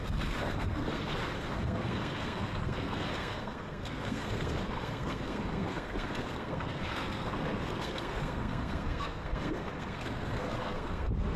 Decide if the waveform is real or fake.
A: fake